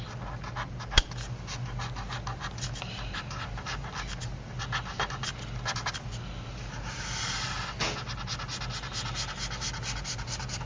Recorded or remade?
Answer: recorded